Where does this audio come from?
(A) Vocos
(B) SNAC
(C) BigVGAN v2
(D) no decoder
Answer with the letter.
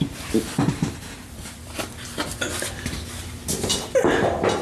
C